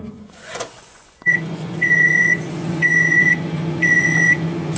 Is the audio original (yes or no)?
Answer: no